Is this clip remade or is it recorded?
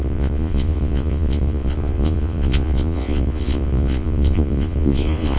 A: remade